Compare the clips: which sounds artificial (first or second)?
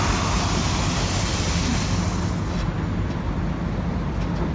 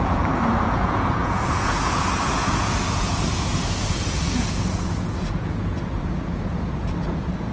second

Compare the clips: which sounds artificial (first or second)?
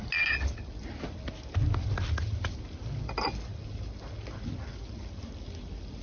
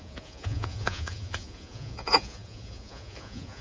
second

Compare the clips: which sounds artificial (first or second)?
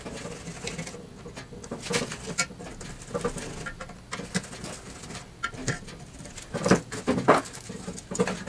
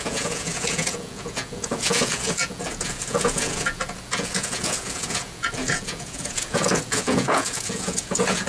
second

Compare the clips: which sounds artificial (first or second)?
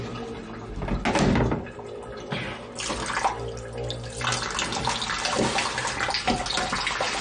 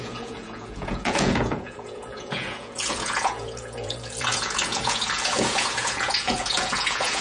second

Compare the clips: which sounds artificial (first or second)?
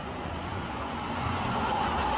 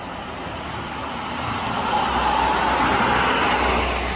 first